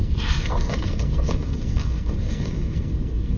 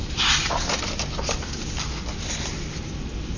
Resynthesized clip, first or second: first